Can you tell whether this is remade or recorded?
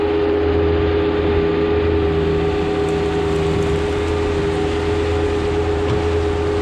recorded